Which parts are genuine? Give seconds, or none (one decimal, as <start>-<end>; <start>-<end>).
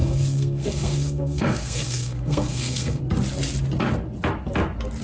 3.0-5.0